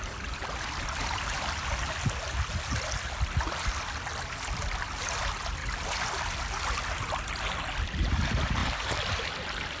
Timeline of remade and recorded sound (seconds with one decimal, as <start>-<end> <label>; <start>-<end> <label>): 0.0-8.6 recorded; 8.6-9.8 remade

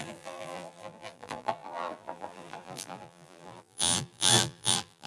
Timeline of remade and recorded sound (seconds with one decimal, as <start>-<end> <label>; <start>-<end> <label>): 0.0-5.1 remade

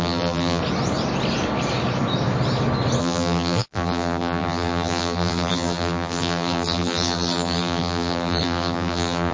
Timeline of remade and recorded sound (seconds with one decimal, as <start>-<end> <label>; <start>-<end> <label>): 0.0-0.6 remade; 0.6-3.0 recorded; 3.0-9.3 remade

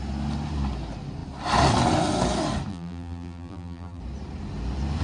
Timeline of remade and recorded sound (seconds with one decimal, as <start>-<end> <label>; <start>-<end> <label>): 0.0-2.7 recorded; 2.7-4.0 remade; 4.0-5.0 recorded

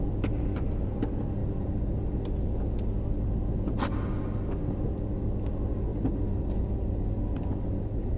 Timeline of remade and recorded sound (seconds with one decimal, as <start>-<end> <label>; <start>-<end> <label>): 0.0-1.4 recorded; 1.4-2.5 remade; 2.5-5.9 recorded; 5.9-6.9 remade; 6.9-8.2 recorded

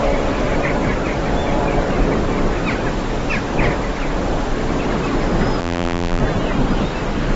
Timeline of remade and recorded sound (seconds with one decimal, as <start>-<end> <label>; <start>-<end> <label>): 0.0-5.6 recorded; 5.6-6.2 remade; 6.2-7.4 recorded

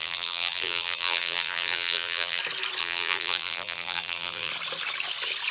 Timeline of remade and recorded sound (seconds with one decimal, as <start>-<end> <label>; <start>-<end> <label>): 0.0-2.4 remade; 2.4-2.8 recorded; 2.8-4.5 remade; 4.5-5.5 recorded

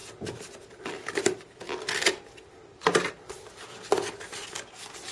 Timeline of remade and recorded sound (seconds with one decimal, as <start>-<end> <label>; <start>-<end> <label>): 0.0-5.1 recorded